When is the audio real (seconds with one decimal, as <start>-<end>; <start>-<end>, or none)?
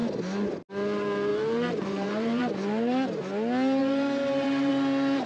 0.0-1.3; 2.5-3.8; 4.7-5.3